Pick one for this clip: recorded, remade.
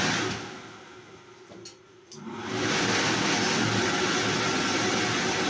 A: recorded